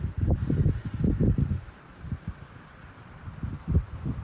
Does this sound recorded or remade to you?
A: recorded